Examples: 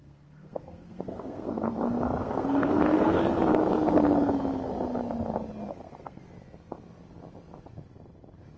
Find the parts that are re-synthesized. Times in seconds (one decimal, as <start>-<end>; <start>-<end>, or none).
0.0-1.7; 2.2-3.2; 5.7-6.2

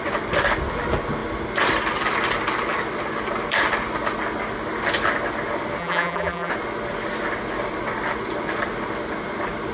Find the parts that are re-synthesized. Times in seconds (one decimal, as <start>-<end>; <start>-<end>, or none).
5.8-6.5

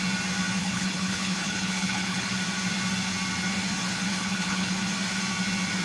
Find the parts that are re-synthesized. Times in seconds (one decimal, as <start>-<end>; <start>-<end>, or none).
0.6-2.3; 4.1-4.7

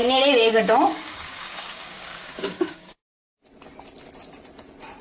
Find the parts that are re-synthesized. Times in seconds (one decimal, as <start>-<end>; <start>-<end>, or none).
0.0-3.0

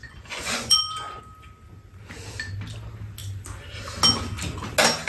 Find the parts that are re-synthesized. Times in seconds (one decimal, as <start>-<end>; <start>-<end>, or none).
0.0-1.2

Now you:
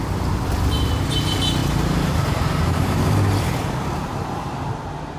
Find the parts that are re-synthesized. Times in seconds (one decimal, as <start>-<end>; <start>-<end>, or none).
1.6-4.7

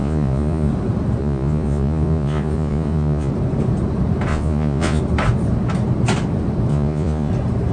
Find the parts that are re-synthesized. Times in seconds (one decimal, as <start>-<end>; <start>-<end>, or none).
0.0-0.7; 1.2-3.3; 4.3-5.0; 6.7-7.3

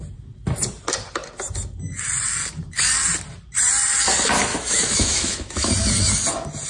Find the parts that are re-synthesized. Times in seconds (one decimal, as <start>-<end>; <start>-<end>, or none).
4.5-5.7